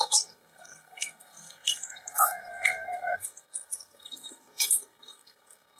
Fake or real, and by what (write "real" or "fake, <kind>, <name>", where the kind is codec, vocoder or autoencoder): fake, codec, SNAC